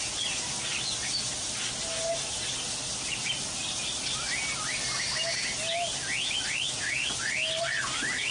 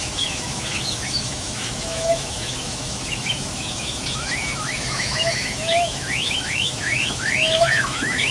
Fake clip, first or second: second